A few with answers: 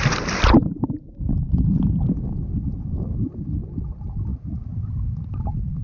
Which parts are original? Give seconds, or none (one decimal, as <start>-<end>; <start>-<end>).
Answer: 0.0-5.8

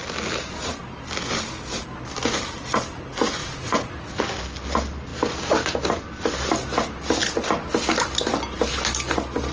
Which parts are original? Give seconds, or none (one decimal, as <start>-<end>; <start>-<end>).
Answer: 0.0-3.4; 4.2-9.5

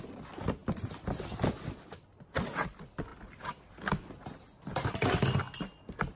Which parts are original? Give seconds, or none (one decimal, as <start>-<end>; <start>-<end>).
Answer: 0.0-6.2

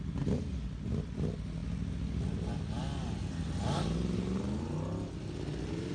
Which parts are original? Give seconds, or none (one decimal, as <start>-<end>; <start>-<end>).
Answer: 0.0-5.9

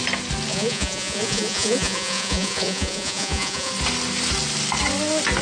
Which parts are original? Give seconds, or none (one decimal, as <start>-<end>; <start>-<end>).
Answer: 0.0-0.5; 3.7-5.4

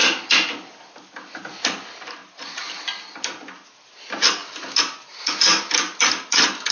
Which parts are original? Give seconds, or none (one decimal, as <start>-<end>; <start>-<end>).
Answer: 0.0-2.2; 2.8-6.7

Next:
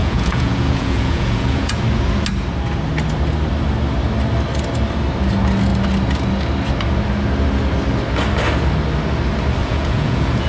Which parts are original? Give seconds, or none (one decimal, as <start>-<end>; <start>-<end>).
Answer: 1.8-9.6